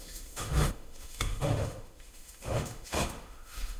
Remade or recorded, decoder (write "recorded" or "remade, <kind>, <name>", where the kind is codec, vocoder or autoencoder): remade, autoencoder, DAC-VAE